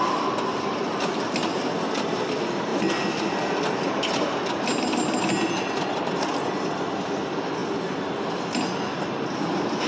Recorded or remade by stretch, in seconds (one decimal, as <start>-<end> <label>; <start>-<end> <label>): 0.0-9.9 recorded